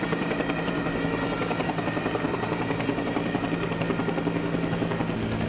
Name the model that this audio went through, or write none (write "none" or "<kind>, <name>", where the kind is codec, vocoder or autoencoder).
none